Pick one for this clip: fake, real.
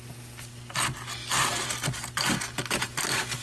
real